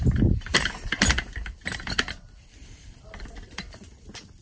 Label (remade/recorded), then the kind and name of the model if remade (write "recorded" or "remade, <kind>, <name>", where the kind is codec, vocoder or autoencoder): remade, vocoder, BigVGAN v2